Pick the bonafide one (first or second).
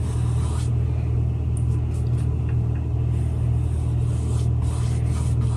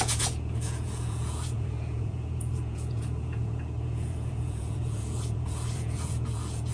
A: first